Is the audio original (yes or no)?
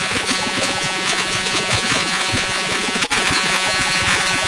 no